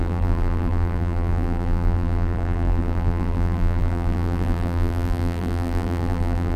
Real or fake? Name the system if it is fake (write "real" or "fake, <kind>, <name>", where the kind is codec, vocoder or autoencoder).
fake, vocoder, BigVGAN v2